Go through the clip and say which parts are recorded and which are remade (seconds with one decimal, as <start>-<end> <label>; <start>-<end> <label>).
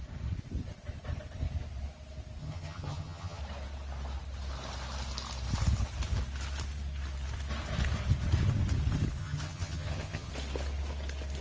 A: 0.0-2.4 recorded; 2.4-3.4 remade; 3.4-9.2 recorded; 9.2-10.3 remade; 10.3-11.4 recorded